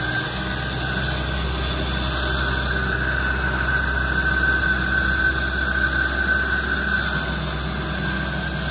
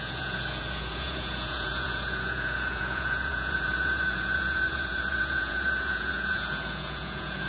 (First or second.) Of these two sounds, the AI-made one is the second